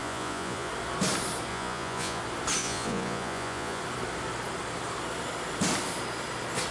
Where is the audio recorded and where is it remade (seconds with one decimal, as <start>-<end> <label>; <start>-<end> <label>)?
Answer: 0.0-0.7 remade; 0.7-1.5 recorded; 1.5-2.2 remade; 2.2-2.6 recorded; 2.6-3.8 remade; 3.8-6.7 recorded